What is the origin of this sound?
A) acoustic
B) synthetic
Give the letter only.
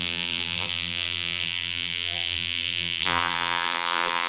B